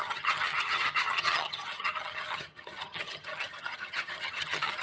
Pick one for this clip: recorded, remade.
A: remade